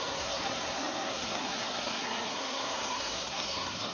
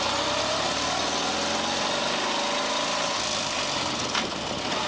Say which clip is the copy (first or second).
first